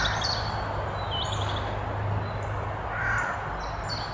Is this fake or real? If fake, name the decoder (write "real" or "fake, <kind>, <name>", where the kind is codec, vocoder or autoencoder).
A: real